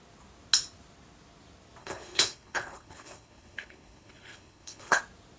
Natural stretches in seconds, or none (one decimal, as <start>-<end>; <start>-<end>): 0.0-1.8; 5.0-5.4